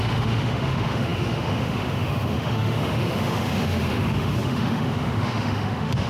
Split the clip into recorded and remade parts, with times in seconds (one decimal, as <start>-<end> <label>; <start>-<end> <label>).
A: 0.0-6.1 remade